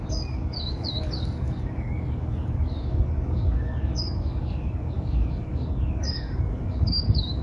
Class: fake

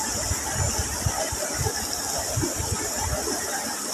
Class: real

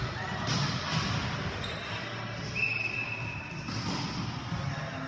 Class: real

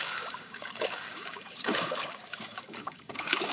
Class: fake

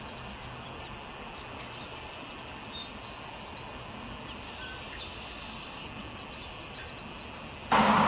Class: real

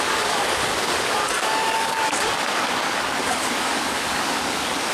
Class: fake